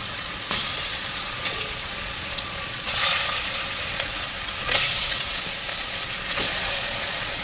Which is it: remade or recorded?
remade